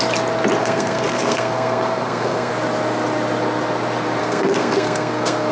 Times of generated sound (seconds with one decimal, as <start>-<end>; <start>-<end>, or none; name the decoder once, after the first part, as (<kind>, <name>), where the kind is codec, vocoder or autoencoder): 0.6-2.5 (codec, SNAC); 4.2-5.5